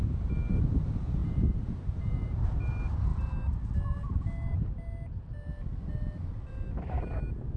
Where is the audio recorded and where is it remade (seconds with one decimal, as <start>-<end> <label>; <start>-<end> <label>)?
0.0-1.2 recorded; 1.2-2.7 remade; 2.7-7.6 recorded